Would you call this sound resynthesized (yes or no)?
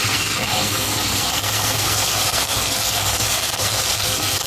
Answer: yes